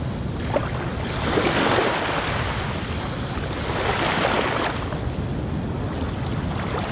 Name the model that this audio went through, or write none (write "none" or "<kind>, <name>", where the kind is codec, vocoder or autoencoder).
none